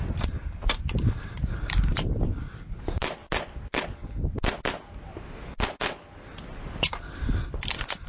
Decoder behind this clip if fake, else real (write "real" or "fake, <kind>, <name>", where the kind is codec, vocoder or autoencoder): real